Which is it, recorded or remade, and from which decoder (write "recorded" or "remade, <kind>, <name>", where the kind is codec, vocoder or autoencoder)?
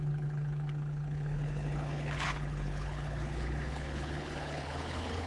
remade, codec, HILCodec